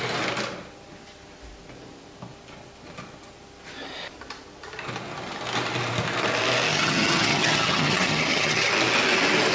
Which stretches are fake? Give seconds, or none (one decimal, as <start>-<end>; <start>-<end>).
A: 6.7-8.7